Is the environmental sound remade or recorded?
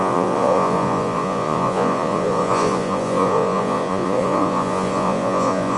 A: remade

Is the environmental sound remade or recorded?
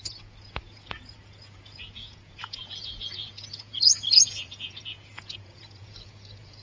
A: remade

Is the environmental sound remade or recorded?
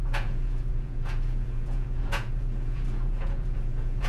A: remade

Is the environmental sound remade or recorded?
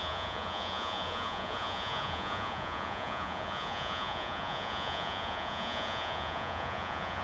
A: remade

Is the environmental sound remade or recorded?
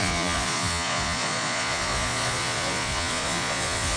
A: remade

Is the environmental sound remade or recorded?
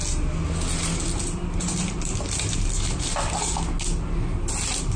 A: recorded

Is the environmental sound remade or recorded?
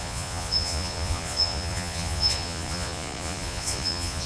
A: remade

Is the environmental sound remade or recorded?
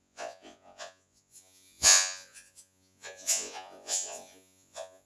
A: remade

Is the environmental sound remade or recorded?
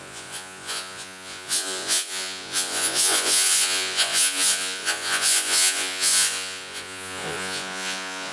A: remade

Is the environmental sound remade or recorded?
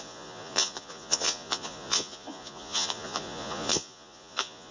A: remade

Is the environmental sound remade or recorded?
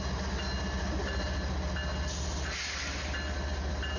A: recorded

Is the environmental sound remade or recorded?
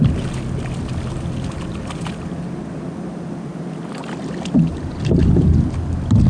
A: recorded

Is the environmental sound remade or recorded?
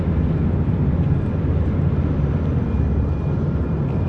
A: recorded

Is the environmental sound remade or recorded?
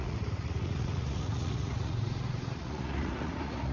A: remade